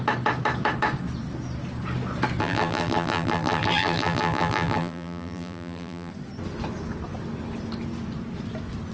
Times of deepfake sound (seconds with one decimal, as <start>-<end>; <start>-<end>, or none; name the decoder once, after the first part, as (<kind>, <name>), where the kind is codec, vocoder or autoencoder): 2.4-6.1 (vocoder, BigVGAN v2)